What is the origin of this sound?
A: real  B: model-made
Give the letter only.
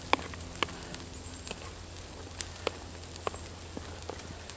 A